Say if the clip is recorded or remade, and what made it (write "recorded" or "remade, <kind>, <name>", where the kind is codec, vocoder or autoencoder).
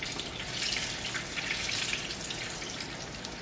remade, vocoder, BigVGAN v2